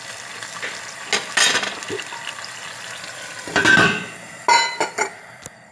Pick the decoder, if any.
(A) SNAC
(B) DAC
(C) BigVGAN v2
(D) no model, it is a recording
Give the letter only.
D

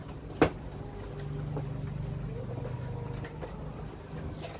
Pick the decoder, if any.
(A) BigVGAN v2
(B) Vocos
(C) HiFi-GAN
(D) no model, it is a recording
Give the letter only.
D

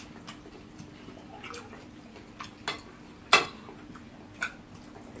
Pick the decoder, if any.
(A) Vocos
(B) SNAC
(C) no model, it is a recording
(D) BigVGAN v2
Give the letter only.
C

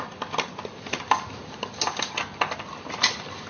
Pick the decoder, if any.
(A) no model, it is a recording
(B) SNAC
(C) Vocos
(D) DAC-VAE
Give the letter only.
A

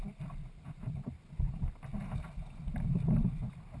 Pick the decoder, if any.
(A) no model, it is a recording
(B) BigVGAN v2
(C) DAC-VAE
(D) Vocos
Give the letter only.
A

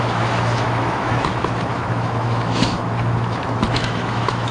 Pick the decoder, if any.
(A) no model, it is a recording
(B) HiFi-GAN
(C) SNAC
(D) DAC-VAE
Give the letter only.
D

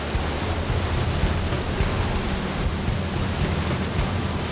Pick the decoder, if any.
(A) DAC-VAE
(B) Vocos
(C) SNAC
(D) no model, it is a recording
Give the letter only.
D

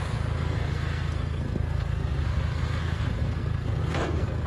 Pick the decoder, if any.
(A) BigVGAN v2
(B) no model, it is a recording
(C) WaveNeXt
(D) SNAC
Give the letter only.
D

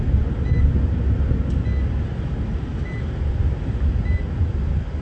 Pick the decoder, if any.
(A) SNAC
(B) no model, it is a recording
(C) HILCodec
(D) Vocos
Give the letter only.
B